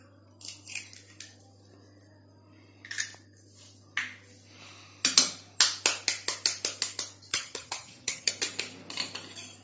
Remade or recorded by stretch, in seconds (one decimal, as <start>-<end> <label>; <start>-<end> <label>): 0.0-7.3 recorded; 7.3-8.3 remade; 8.3-9.6 recorded